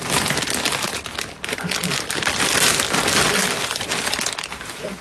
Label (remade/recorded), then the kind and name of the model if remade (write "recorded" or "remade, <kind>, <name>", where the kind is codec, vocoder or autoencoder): recorded